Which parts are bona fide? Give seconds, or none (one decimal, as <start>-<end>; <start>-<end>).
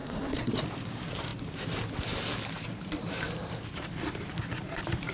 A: 0.5-5.1